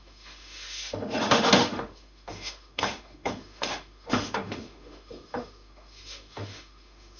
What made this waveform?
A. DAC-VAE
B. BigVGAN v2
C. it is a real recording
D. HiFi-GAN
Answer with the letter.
A